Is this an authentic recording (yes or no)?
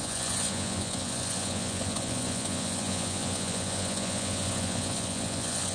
no